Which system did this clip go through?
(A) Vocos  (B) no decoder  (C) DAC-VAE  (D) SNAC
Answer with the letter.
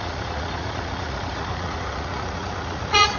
A